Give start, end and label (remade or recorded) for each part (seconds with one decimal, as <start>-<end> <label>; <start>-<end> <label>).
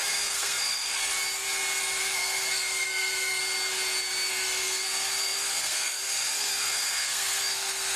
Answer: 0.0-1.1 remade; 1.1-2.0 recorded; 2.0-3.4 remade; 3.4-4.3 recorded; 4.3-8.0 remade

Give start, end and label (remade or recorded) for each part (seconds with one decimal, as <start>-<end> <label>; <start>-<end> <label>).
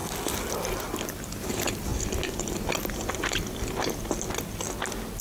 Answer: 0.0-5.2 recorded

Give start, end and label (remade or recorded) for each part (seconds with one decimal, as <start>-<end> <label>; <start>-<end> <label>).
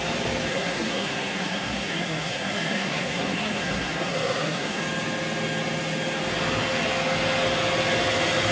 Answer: 0.0-0.5 recorded; 0.5-4.8 remade; 4.8-8.5 recorded